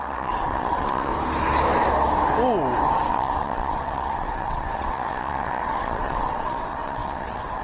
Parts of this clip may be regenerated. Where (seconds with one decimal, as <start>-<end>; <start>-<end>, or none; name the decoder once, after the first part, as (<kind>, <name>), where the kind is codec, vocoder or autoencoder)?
0.0-1.1 (vocoder, WaveNeXt); 3.1-7.6